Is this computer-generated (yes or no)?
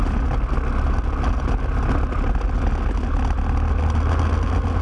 no